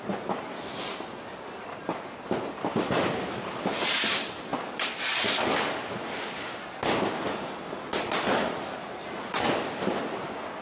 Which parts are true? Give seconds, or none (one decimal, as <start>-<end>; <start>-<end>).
0.0-8.8; 9.5-10.6